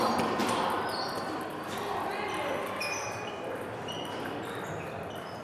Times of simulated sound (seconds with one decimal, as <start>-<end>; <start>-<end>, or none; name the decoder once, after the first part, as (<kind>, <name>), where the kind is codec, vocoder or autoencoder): none